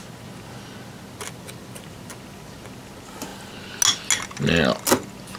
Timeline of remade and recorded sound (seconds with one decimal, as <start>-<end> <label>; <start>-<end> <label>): 0.0-5.4 recorded